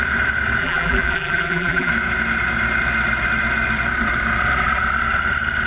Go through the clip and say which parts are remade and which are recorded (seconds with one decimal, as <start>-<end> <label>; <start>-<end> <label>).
0.0-0.6 recorded; 0.6-1.9 remade; 1.9-5.7 recorded